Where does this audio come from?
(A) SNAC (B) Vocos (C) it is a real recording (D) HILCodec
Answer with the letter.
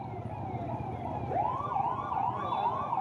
C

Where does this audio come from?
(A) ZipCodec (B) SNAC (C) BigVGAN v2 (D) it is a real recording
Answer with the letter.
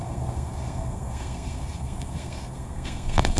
B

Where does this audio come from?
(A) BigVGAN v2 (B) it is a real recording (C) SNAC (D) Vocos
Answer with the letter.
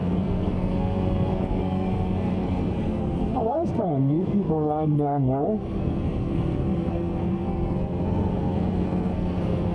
C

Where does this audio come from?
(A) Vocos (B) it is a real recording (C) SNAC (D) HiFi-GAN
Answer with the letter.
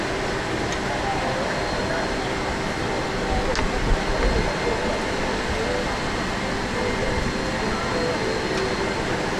B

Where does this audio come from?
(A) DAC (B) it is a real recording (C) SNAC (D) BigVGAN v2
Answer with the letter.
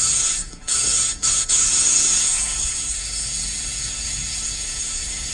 C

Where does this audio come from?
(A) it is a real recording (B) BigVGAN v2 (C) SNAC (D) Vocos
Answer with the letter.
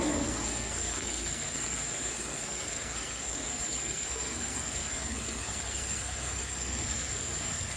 C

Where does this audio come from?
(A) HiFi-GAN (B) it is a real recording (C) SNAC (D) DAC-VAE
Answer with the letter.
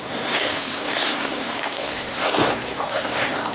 C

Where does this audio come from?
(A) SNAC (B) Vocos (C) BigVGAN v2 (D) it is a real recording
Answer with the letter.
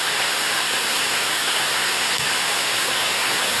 A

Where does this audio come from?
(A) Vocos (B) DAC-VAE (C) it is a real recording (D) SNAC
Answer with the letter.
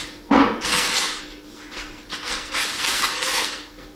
D